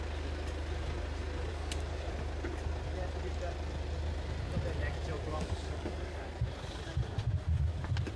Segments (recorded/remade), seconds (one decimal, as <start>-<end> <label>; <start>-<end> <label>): 0.0-1.5 recorded; 1.5-2.1 remade; 2.1-5.3 recorded; 5.3-6.2 remade; 6.2-8.2 recorded